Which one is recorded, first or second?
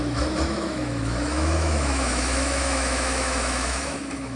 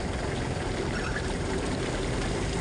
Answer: second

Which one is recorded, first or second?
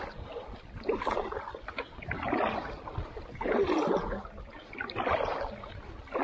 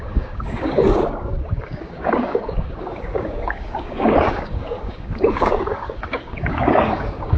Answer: first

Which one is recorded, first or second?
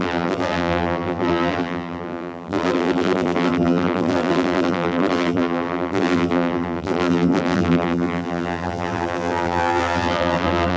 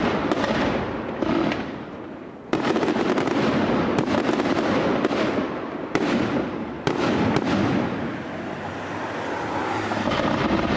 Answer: second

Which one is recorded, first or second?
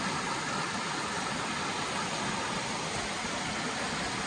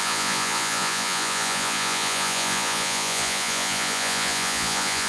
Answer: first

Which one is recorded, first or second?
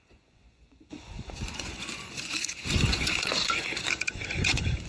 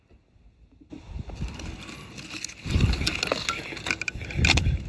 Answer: second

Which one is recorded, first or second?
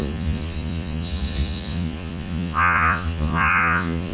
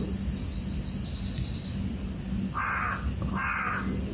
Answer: second